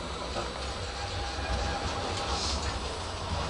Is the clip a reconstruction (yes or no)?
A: no